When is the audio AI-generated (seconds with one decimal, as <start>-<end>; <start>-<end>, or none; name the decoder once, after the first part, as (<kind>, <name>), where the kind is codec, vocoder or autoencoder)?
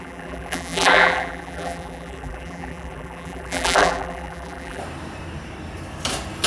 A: 0.0-4.8 (vocoder, BigVGAN v2)